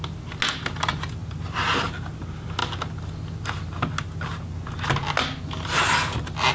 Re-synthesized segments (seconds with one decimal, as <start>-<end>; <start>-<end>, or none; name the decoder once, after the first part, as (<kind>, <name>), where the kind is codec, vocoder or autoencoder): none